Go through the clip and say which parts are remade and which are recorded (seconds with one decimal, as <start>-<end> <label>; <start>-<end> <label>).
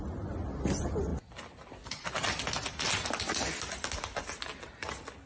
0.0-5.3 recorded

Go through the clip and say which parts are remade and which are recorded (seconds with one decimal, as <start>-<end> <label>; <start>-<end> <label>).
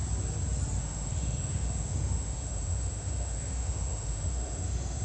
0.0-0.8 recorded; 0.8-5.0 remade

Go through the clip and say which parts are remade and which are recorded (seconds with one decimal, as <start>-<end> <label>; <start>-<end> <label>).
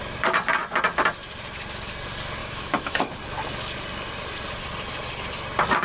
0.0-2.4 recorded; 2.4-3.1 remade; 3.1-5.8 recorded